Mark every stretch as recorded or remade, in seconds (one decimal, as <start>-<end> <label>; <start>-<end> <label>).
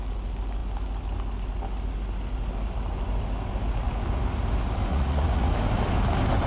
0.0-4.9 recorded; 4.9-5.5 remade; 5.5-6.5 recorded